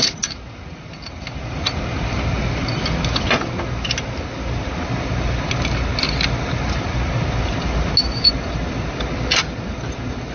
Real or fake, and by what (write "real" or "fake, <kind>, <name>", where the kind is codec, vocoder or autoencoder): real